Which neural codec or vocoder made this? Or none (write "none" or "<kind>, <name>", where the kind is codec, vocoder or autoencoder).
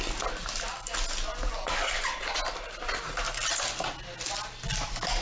none